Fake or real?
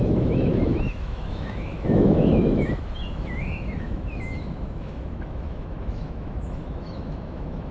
fake